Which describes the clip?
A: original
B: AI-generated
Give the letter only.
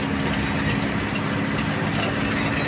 A